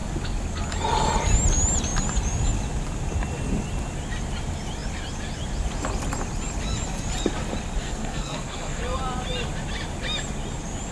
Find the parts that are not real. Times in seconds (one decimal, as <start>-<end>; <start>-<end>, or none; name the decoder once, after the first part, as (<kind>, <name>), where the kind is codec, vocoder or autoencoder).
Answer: 7.8-8.8 (codec, SNAC)